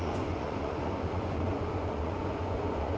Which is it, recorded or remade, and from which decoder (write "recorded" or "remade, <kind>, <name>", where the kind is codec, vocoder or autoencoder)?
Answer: remade, vocoder, Vocos